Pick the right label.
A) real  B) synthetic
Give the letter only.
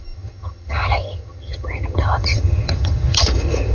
B